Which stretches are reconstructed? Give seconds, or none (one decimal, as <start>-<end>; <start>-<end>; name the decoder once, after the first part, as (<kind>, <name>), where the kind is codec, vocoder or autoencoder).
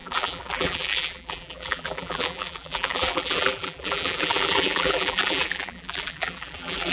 0.0-6.9 (vocoder, BigVGAN v2)